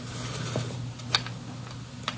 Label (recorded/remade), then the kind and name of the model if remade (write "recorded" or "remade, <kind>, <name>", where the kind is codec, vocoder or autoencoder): recorded